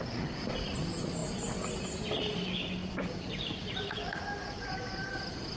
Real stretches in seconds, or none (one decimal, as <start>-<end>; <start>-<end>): 0.0-2.8; 4.6-5.6